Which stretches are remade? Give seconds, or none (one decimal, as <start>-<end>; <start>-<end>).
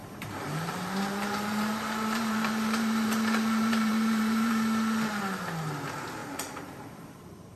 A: 0.0-4.5; 6.2-7.6